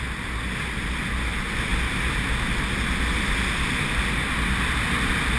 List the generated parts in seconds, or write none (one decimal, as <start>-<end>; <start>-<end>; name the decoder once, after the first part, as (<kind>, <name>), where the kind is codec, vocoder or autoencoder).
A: none